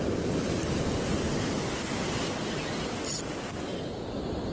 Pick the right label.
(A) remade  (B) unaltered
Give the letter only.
B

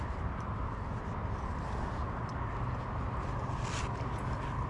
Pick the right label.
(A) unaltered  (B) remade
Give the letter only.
A